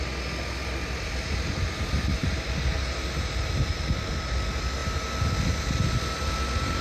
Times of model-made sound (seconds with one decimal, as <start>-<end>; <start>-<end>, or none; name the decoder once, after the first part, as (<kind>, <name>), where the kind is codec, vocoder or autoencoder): none